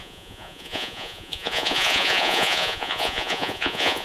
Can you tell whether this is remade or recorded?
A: remade